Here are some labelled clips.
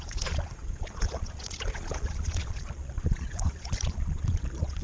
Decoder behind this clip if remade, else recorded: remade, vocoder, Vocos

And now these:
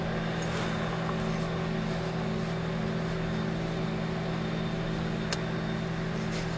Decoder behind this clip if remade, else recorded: recorded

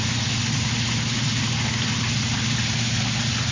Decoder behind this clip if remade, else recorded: recorded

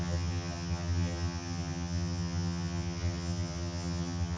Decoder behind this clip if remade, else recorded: remade, vocoder, HiFi-GAN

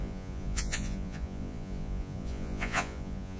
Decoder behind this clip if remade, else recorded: remade, vocoder, Vocos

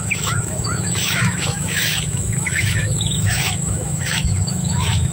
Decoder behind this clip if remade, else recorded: remade, autoencoder, DAC-VAE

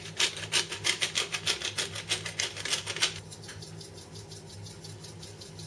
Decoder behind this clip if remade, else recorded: recorded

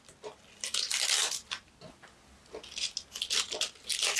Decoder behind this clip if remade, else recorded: recorded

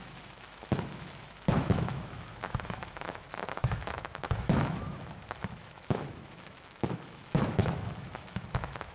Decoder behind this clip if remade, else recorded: remade, autoencoder, DAC-VAE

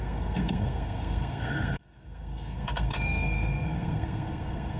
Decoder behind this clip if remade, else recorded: remade, codec, SNAC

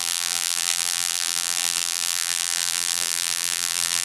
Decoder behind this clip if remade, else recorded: remade, vocoder, BigVGAN v2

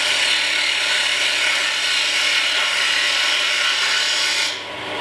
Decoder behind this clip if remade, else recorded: recorded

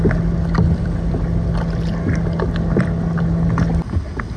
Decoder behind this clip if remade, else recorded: recorded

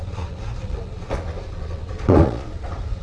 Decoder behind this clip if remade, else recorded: remade, vocoder, Vocos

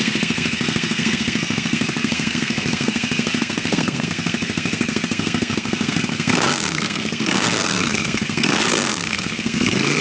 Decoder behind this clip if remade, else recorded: remade, codec, SNAC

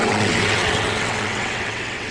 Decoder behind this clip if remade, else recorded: remade, vocoder, WaveNeXt